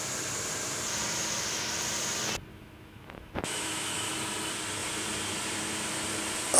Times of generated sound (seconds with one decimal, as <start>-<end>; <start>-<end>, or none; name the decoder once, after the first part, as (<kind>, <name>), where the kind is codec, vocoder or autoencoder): 2.5-4.1 (autoencoder, DAC-VAE)